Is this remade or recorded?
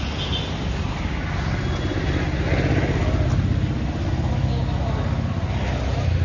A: recorded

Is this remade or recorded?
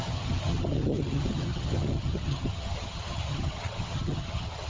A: remade